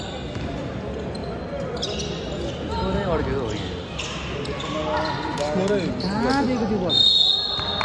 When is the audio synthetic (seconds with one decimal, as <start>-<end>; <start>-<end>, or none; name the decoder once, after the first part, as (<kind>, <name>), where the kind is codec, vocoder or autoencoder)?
none